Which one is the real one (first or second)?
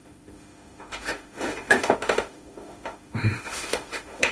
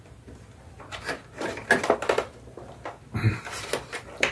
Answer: second